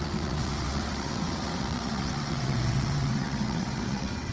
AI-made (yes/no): yes